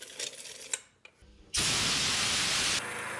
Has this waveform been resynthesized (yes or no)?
no